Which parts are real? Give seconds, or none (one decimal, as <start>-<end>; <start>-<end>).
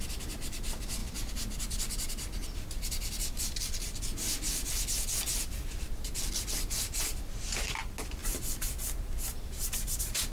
0.0-8.2